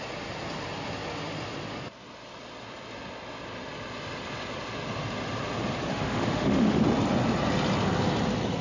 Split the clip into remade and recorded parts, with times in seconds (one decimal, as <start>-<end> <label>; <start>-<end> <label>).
0.0-5.9 recorded; 5.9-6.8 remade; 6.8-8.6 recorded